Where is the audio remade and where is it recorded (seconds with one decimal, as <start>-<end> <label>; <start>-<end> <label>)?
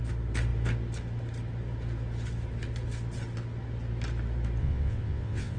0.0-4.6 recorded; 4.6-5.6 remade